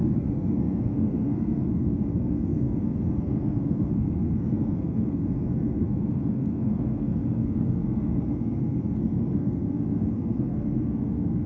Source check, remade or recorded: remade